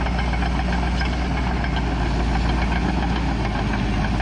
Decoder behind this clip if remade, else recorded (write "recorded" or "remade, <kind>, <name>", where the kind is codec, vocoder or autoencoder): recorded